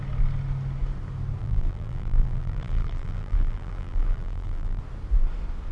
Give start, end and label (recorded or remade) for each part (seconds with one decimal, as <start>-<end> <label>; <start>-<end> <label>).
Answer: 0.0-1.4 recorded; 1.4-4.8 remade; 4.8-5.7 recorded